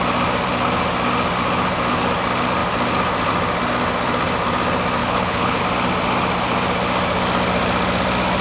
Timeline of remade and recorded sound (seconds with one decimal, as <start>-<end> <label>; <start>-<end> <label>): 0.0-5.0 recorded; 5.0-5.6 remade; 5.6-8.4 recorded